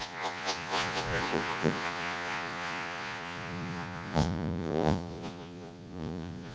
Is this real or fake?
fake